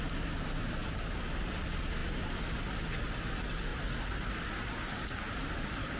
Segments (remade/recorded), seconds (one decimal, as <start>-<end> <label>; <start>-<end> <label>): 0.0-6.0 recorded